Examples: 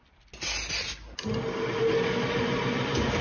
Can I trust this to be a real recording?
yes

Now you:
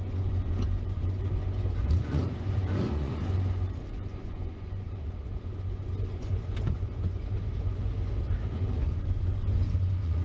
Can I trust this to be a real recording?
no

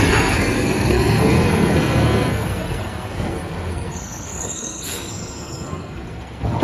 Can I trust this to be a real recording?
no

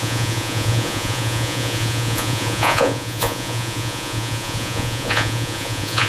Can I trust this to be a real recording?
no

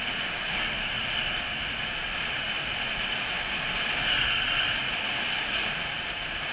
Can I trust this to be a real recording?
yes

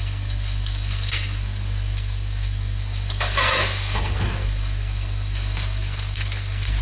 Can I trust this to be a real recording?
no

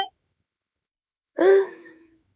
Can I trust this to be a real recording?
no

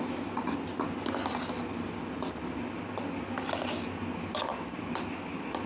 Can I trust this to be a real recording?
yes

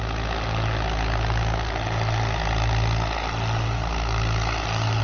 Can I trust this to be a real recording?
yes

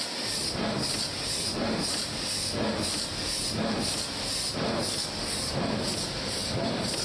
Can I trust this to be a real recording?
yes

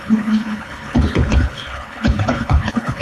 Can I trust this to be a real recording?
no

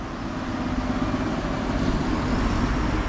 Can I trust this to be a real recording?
yes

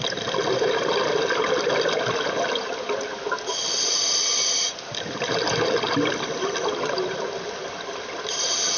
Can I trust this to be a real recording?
yes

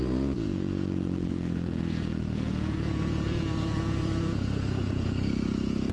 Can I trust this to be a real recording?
no